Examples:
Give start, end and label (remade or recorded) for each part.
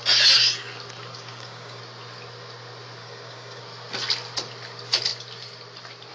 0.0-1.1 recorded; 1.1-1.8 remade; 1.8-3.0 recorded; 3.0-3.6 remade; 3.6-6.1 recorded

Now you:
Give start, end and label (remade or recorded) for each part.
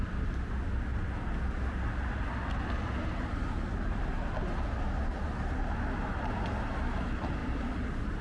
0.0-8.2 recorded